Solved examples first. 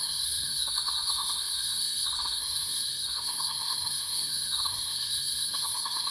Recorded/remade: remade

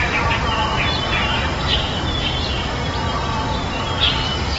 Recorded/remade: recorded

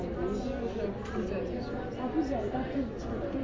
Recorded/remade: recorded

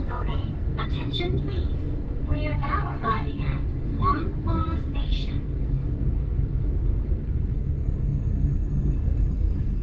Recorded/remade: remade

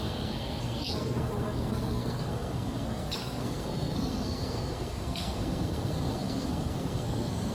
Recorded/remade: remade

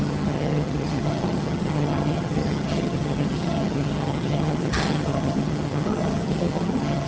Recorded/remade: remade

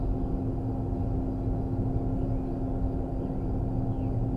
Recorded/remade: recorded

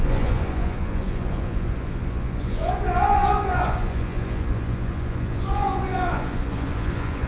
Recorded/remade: remade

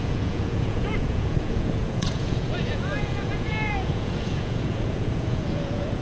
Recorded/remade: remade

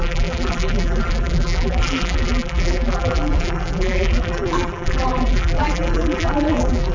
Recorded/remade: remade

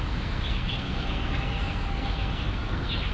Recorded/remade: remade